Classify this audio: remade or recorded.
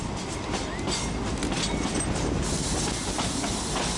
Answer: recorded